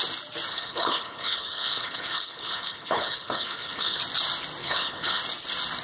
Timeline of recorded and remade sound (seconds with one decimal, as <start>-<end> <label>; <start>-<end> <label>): 0.0-0.5 recorded; 0.5-4.0 remade; 4.0-4.6 recorded; 4.6-5.2 remade; 5.2-5.8 recorded